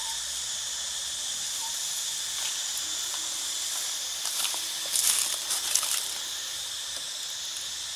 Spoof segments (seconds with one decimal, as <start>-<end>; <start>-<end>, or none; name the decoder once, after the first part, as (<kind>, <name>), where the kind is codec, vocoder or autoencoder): none